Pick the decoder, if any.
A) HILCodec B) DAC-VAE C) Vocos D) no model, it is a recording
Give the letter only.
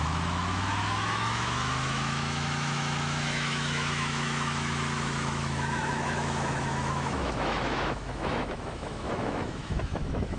B